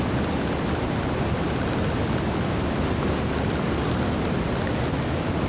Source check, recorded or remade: recorded